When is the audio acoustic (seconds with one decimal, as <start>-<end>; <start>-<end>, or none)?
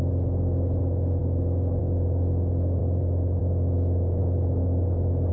0.0-5.3